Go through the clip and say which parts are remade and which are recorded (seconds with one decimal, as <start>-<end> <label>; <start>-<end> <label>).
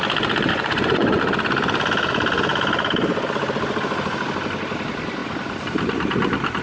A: 0.0-0.5 recorded; 0.5-1.2 remade; 1.2-6.6 recorded